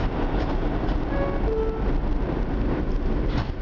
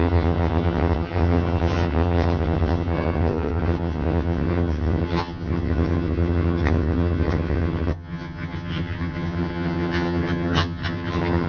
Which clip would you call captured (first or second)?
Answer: first